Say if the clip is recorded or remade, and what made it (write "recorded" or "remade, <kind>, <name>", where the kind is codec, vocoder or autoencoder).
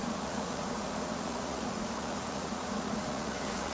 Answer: remade, vocoder, Vocos